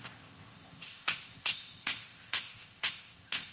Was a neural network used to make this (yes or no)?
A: yes